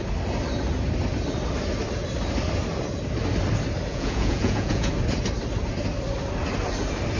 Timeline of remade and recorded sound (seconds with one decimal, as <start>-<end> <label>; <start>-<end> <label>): 0.0-3.9 recorded; 3.9-4.9 remade; 4.9-7.2 recorded